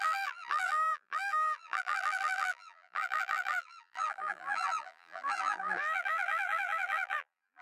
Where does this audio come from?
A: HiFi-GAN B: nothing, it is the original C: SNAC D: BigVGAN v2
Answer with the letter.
D